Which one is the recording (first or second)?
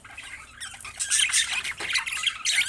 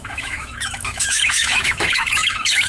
first